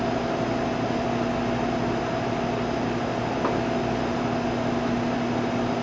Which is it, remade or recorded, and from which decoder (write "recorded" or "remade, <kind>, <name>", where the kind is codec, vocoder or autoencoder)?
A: recorded